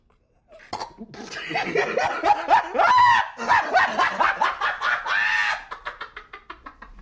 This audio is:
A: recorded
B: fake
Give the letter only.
A